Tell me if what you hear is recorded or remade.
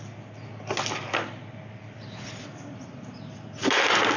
recorded